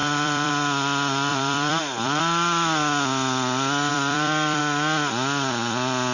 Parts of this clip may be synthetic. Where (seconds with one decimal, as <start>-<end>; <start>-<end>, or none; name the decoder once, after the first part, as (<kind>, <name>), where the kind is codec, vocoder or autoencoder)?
0.0-0.5 (vocoder, BigVGAN v2); 1.3-2.2; 3.9-4.6